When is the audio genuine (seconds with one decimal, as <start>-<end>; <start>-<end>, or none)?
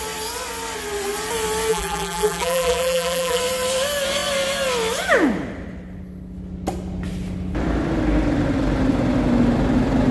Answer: 0.0-1.7; 3.4-10.1